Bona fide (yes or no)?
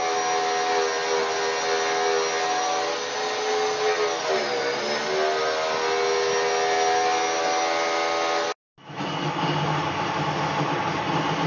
yes